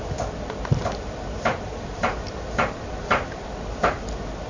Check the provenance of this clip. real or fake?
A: real